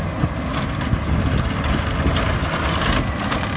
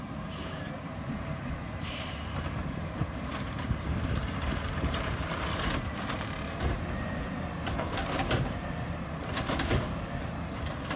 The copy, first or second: second